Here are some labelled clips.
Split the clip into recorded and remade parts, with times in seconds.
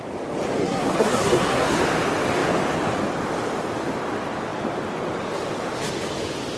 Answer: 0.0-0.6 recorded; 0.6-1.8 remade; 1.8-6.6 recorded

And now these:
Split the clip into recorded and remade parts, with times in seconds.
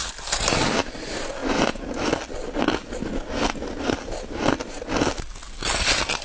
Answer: 0.0-6.2 recorded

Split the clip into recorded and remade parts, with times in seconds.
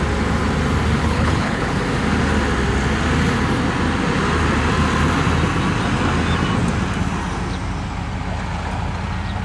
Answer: 0.0-1.0 recorded; 1.0-1.8 remade; 1.8-9.4 recorded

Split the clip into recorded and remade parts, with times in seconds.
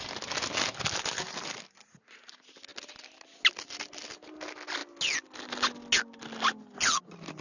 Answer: 0.0-7.4 recorded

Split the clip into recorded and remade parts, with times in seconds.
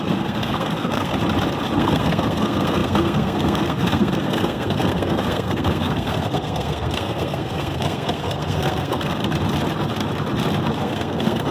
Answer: 0.0-1.1 remade; 1.1-1.8 recorded; 1.8-9.2 remade; 9.2-10.8 recorded; 10.8-11.5 remade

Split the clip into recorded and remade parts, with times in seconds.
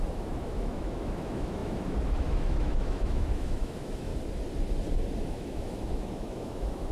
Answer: 0.0-4.1 remade; 4.1-5.2 recorded; 5.2-6.9 remade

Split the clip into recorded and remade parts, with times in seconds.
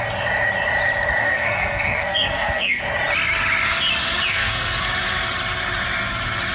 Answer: 0.0-1.2 recorded; 1.2-2.8 remade; 2.8-4.3 recorded; 4.3-4.8 remade; 4.8-6.5 recorded